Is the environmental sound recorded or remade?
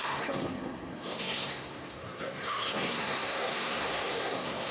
remade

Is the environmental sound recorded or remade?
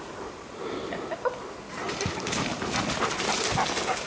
recorded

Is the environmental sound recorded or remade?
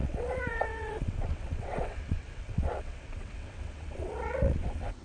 remade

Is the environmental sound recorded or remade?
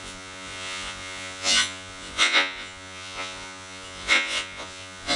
remade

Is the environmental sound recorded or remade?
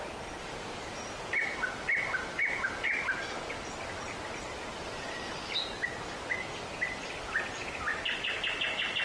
recorded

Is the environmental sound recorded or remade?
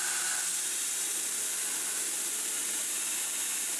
recorded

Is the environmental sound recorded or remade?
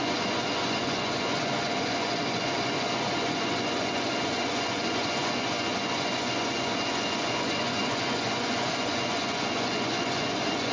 remade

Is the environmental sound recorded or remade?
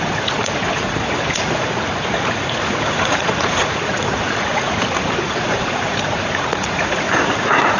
remade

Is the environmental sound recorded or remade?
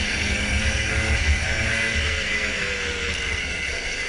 remade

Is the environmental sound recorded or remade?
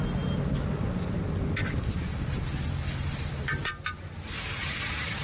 recorded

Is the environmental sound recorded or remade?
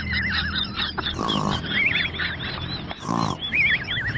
recorded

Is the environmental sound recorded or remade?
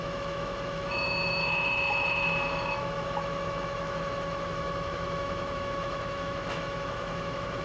remade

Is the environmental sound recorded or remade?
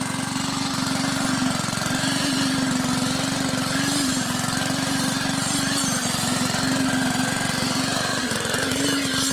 recorded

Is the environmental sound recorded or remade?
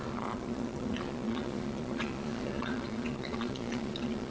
remade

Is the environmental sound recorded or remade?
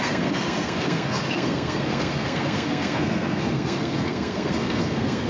remade